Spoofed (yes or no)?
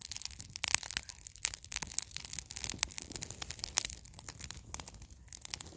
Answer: no